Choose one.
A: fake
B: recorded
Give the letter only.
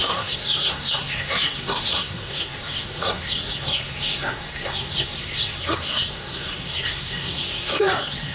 A